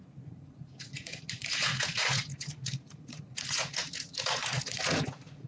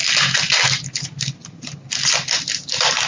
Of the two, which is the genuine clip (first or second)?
second